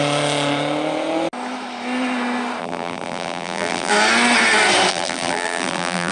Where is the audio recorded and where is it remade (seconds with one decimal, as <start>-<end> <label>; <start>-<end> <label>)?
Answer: 0.0-2.6 recorded; 2.6-3.9 remade; 3.9-4.9 recorded; 4.9-6.1 remade